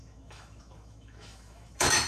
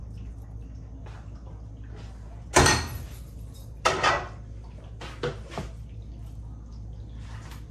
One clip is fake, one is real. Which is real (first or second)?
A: second